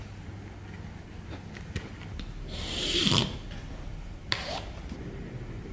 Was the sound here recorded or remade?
recorded